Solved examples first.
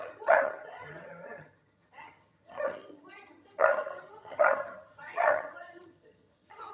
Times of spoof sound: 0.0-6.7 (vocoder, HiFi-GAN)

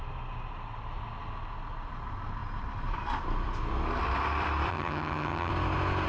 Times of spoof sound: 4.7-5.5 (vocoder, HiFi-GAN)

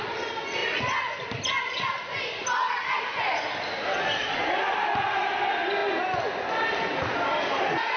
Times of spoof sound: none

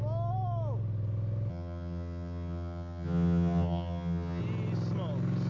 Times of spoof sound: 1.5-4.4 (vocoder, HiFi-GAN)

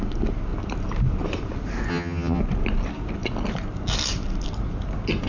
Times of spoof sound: 1.9-2.4 (vocoder, HiFi-GAN)

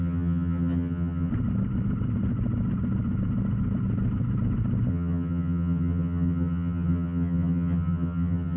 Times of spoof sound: 0.0-1.3 (vocoder, HiFi-GAN); 4.9-8.6

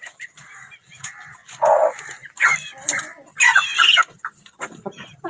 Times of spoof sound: none

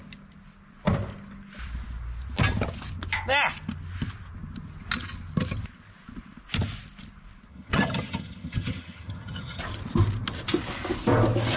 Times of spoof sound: 7.5-9.6 (vocoder, HiFi-GAN)